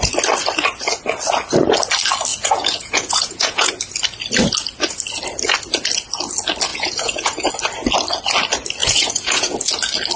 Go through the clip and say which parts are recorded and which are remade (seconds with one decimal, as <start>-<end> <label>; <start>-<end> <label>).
0.0-2.3 recorded; 2.3-3.7 remade; 3.7-6.7 recorded; 6.7-7.5 remade; 7.5-8.8 recorded; 8.8-9.7 remade; 9.7-10.2 recorded